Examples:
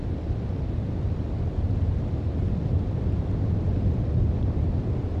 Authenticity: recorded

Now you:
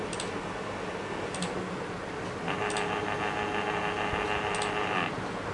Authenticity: recorded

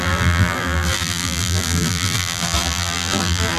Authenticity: remade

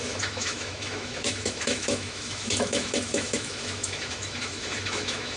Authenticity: remade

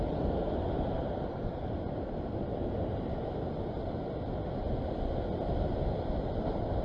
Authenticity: recorded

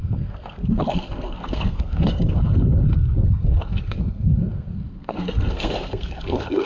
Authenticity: remade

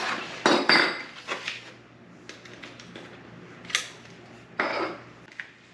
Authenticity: recorded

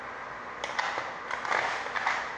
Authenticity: recorded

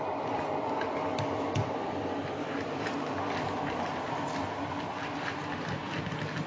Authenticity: remade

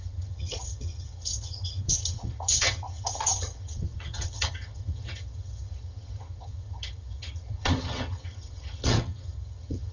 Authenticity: remade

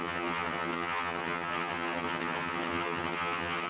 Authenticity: remade